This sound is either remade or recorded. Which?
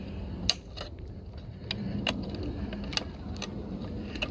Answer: recorded